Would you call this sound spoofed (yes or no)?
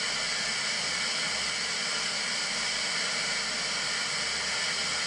no